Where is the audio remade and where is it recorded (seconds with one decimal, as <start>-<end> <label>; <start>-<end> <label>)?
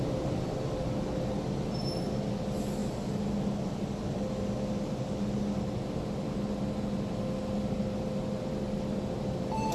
0.0-9.7 recorded